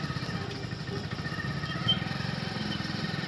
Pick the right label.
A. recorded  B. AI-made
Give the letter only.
A